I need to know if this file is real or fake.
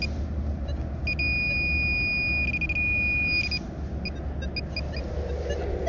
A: real